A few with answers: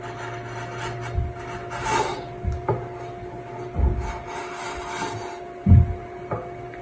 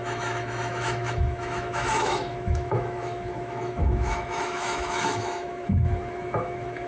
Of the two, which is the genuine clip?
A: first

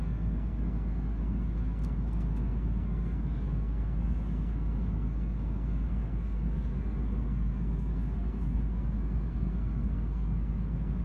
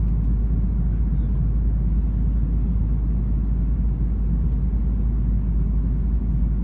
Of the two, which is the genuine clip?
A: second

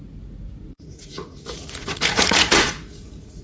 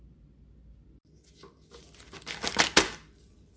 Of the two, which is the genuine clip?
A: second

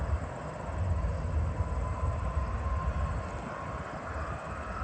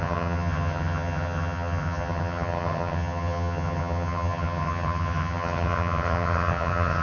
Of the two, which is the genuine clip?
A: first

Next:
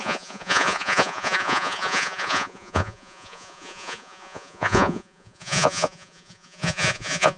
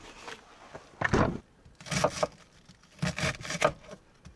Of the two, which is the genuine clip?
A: second